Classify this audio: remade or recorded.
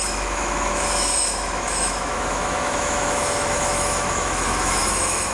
remade